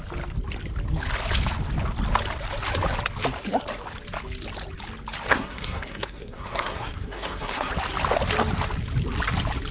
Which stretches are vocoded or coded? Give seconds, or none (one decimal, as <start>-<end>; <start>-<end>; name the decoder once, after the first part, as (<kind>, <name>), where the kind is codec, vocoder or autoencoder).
5.3-7.7 (codec, SNAC)